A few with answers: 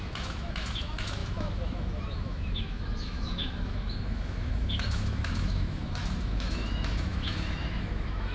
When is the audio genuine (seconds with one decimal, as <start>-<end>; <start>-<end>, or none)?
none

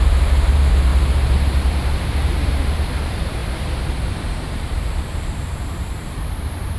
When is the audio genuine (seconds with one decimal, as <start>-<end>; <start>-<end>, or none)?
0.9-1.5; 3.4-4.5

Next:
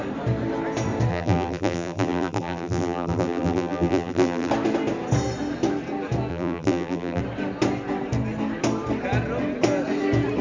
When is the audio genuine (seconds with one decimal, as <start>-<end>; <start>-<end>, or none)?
0.0-1.1; 4.5-6.3; 7.2-10.4